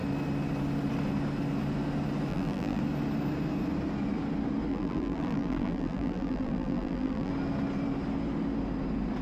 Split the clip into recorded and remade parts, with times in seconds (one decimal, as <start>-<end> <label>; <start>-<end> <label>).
0.0-2.3 recorded; 2.3-2.8 remade; 2.8-4.7 recorded; 4.7-7.3 remade; 7.3-9.2 recorded